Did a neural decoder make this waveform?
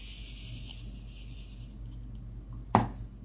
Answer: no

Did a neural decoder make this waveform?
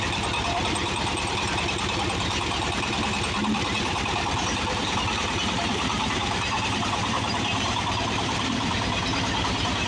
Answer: yes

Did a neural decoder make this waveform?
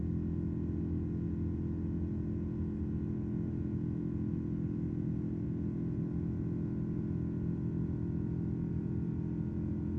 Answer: no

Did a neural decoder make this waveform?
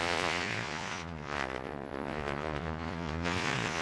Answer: yes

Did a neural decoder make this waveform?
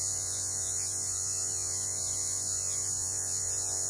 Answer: yes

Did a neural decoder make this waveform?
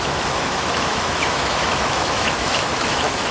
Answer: yes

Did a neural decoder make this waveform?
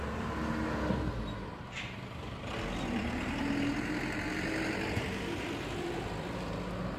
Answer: no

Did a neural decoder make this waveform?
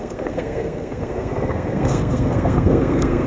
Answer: yes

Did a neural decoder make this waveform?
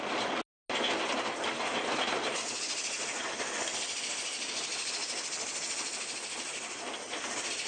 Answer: no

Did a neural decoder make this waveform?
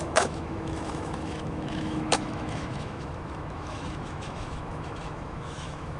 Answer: yes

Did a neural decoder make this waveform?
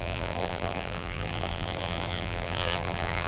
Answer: yes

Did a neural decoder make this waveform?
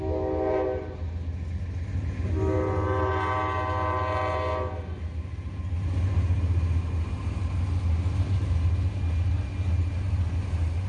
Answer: no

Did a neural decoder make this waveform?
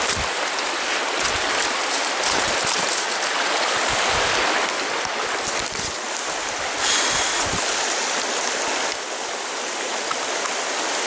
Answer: no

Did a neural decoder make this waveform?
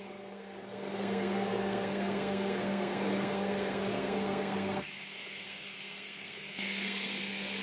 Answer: yes